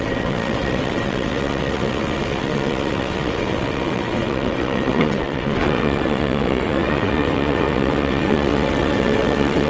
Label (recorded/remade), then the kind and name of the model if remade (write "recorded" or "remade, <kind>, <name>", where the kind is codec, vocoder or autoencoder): remade, vocoder, WaveNeXt